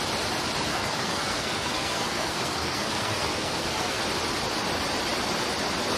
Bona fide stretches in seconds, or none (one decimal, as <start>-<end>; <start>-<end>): 0.0-0.7; 4.0-6.0